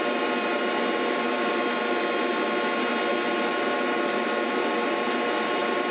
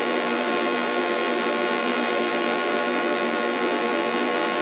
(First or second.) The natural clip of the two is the first